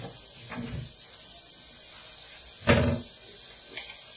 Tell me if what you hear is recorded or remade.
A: recorded